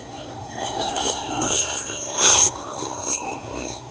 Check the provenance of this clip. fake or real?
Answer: fake